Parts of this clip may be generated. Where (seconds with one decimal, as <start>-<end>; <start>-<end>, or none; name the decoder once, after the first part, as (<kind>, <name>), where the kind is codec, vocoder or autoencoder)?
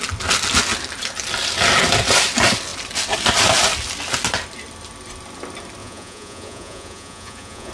5.8-7.7 (vocoder, Vocos)